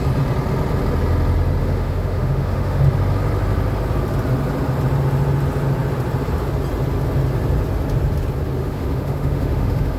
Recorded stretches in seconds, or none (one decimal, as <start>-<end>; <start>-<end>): 0.0-1.6; 2.8-8.6